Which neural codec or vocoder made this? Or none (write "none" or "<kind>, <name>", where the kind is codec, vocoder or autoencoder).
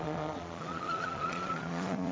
vocoder, Vocos